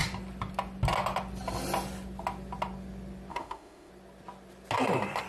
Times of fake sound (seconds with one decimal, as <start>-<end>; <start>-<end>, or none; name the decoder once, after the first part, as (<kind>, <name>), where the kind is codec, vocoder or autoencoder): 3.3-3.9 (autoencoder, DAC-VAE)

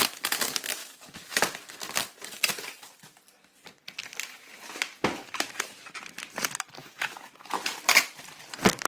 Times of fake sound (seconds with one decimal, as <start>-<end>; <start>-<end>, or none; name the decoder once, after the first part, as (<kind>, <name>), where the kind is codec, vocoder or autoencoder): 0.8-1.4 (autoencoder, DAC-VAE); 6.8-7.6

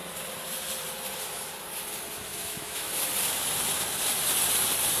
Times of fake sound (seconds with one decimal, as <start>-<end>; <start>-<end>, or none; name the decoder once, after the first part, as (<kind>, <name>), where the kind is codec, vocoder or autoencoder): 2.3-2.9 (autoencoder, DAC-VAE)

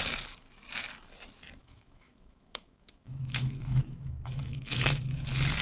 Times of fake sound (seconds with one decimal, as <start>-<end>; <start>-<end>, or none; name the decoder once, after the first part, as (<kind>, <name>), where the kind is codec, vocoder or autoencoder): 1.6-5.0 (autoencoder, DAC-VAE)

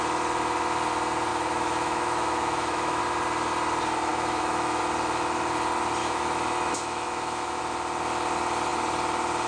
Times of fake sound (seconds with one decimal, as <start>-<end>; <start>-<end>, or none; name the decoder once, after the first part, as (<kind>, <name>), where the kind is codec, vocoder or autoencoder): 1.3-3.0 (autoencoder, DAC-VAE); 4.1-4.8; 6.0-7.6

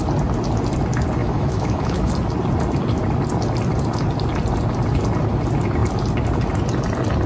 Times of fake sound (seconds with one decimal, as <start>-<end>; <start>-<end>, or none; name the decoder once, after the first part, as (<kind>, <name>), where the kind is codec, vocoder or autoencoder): 1.2-2.1 (autoencoder, DAC-VAE)